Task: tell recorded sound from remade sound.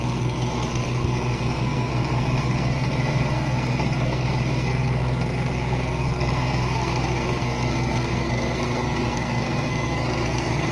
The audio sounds remade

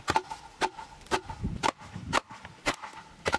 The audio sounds recorded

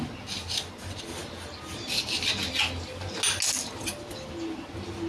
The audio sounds recorded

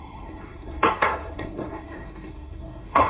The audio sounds remade